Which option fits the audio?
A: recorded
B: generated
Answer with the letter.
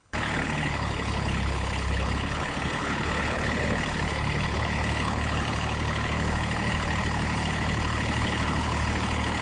B